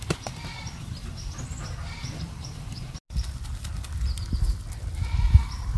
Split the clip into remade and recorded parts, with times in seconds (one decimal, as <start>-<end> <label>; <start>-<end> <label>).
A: 0.0-5.8 recorded